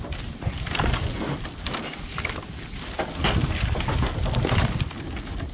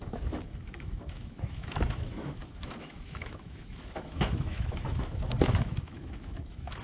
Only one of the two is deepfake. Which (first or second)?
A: second